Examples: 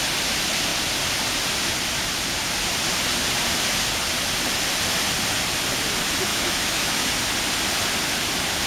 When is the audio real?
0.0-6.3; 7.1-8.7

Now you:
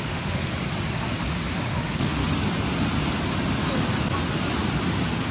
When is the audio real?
0.5-1.7; 2.2-5.3

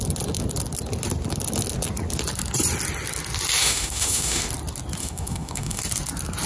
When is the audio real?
0.0-3.6; 4.5-5.0; 5.8-6.5

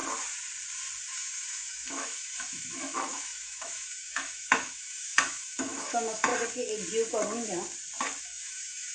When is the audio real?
0.0-1.0; 6.3-8.2

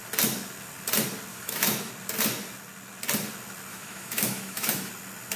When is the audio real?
0.0-1.3; 1.9-3.7; 4.9-5.4

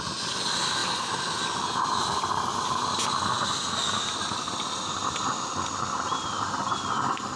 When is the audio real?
0.0-7.4